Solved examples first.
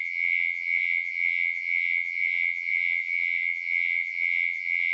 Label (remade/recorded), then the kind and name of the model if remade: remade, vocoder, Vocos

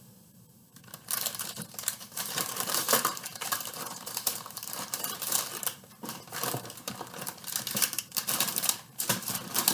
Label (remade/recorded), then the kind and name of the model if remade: remade, vocoder, BigVGAN v2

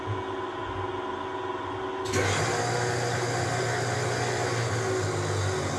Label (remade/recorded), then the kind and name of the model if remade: recorded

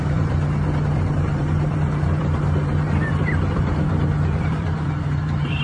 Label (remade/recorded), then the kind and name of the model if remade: remade, vocoder, BigVGAN v2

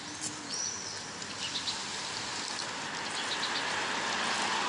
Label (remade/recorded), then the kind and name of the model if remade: recorded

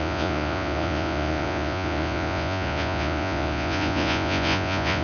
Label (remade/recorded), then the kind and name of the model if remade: remade, vocoder, Vocos